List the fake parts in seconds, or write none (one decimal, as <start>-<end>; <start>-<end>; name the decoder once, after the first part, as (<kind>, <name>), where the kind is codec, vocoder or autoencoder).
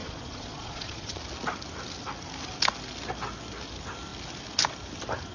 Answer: 0.0-1.2 (vocoder, Vocos)